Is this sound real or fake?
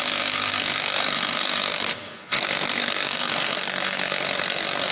fake